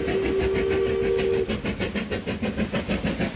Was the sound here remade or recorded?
recorded